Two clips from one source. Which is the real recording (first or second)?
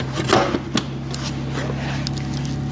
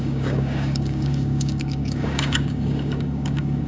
first